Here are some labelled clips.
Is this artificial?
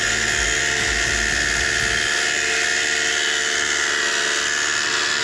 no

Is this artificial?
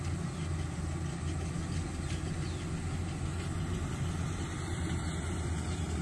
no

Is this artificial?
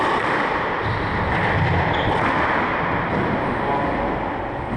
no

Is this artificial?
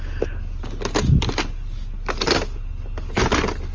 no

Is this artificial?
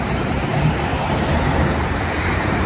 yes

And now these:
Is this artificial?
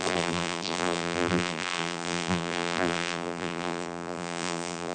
yes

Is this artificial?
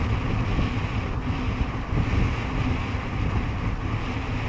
no